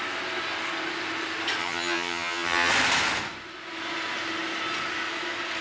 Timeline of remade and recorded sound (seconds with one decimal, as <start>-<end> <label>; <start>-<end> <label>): 0.0-1.6 recorded; 1.6-2.7 remade; 2.7-5.6 recorded